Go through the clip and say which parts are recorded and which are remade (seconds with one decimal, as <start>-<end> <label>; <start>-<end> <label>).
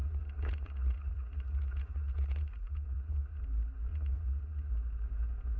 0.0-3.4 remade; 3.4-3.9 recorded; 3.9-4.7 remade; 4.7-5.6 recorded